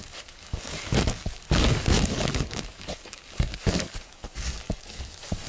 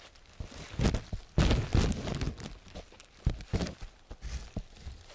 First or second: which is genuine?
second